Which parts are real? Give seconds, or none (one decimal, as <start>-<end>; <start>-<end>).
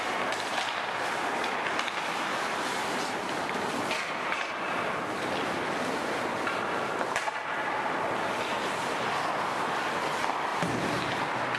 0.0-11.6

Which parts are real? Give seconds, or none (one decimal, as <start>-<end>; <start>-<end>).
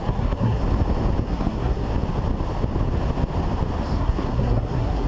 0.6-1.2; 1.9-4.0